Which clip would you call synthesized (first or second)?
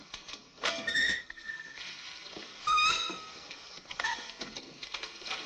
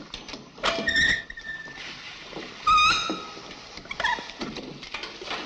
first